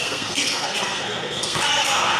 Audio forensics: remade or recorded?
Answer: remade